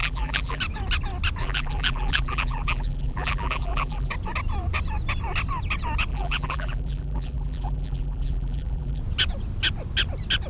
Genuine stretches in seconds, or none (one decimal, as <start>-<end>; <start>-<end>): 0.6-1.4; 4.1-6.1; 9.0-10.5